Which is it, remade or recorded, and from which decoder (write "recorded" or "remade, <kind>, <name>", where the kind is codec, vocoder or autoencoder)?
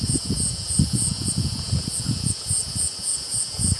remade, vocoder, Vocos